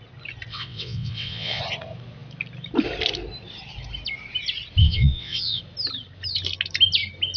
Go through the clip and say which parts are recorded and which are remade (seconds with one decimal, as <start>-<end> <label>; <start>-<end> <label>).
0.0-0.5 recorded; 0.5-1.6 remade; 1.6-4.8 recorded; 4.8-5.6 remade; 5.6-7.4 recorded